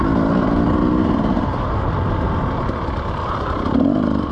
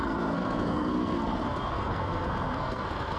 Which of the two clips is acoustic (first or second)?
first